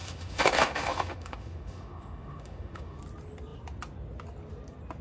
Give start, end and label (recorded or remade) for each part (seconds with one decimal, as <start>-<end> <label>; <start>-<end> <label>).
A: 0.0-3.0 remade; 3.0-5.0 recorded